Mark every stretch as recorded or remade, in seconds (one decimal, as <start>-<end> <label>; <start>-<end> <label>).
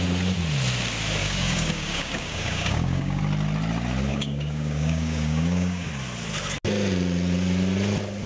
0.0-1.2 recorded; 1.2-3.2 remade; 3.2-4.1 recorded; 4.1-5.9 remade; 5.9-8.3 recorded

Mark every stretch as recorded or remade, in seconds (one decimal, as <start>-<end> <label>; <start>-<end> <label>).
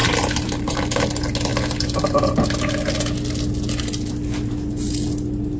0.0-0.8 remade; 0.8-5.6 recorded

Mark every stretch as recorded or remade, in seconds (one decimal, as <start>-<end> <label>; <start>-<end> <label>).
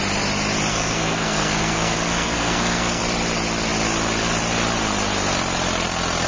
0.0-0.7 recorded; 0.7-3.0 remade; 3.0-6.3 recorded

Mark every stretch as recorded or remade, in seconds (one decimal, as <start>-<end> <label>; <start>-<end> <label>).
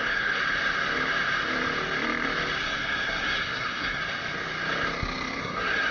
0.0-0.4 remade; 0.4-2.6 recorded; 2.6-4.0 remade; 4.0-5.4 recorded; 5.4-5.9 remade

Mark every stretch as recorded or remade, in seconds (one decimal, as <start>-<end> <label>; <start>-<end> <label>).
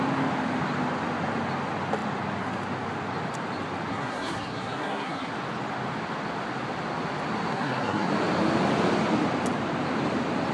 0.0-3.9 recorded; 3.9-5.3 remade; 5.3-7.5 recorded; 7.5-8.1 remade; 8.1-10.5 recorded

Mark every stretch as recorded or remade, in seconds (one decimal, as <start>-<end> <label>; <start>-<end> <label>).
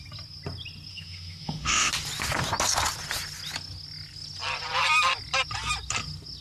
0.0-0.9 recorded; 0.9-1.9 remade; 1.9-6.4 recorded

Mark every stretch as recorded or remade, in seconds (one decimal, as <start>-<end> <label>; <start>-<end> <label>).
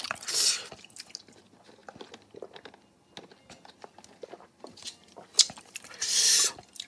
0.0-6.9 recorded